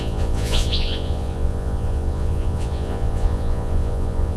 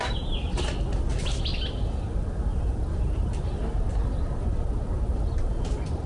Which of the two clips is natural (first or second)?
second